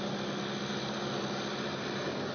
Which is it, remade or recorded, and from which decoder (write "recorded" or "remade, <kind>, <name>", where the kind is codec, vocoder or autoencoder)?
recorded